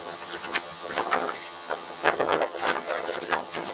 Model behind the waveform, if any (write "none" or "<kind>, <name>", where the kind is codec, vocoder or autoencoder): vocoder, HiFi-GAN